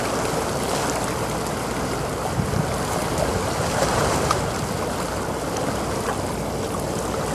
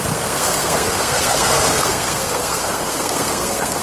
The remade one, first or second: second